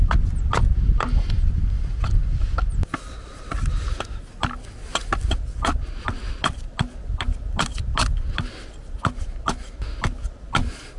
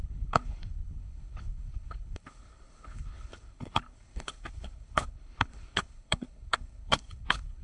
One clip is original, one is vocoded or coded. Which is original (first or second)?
first